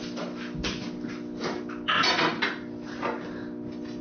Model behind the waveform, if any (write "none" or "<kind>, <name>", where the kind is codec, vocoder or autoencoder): none